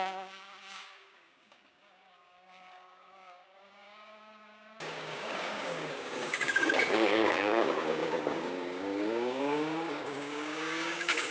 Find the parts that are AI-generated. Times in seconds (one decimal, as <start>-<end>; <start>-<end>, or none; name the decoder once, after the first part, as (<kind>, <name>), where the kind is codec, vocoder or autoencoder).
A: 0.0-11.3 (codec, DAC)